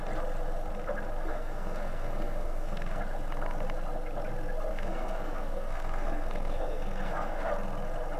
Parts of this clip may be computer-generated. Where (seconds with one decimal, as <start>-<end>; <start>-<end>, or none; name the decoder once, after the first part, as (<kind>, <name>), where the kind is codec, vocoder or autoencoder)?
1.3-3.0 (codec, SNAC); 4.7-7.5